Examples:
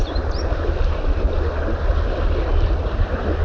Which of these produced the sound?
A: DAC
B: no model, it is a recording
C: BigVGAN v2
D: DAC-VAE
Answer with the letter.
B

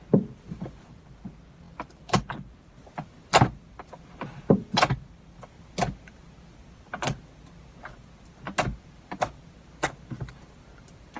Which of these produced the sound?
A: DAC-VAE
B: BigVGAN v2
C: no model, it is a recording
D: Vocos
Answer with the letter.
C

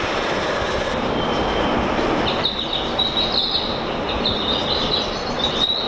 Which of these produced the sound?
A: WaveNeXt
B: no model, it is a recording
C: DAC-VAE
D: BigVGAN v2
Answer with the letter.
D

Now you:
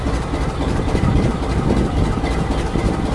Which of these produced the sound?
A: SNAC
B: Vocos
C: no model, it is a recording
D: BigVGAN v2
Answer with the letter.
C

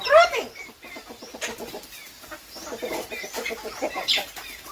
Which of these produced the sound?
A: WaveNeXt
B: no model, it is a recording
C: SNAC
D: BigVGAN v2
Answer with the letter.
D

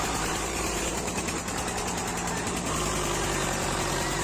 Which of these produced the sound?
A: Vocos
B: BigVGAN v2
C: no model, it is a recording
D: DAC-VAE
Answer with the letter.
B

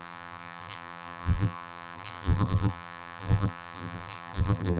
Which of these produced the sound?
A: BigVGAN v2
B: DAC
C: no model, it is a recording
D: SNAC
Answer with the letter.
A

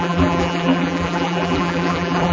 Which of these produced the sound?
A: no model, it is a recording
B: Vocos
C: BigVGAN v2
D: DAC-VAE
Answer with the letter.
C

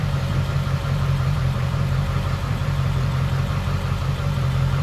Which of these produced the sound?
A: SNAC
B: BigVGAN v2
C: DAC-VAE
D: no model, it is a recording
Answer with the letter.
B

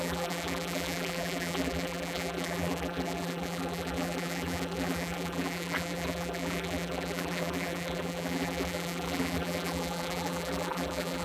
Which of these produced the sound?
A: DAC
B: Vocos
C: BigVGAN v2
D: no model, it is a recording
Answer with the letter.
C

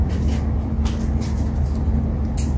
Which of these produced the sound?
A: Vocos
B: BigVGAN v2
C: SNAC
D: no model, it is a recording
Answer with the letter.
D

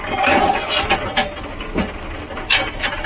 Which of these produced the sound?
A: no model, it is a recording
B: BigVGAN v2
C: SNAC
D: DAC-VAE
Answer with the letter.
A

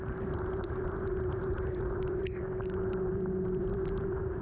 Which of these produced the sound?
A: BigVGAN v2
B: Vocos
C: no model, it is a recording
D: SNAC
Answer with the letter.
A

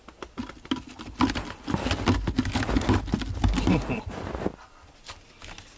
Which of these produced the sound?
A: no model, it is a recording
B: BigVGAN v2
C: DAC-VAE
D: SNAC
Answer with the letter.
A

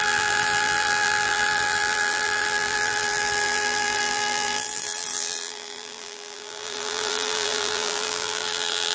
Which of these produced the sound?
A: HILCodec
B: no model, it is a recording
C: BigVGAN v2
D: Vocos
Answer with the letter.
C